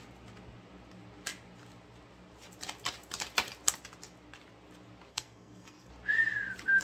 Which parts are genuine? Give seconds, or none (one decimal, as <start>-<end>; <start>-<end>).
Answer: 0.0-5.1; 5.9-6.8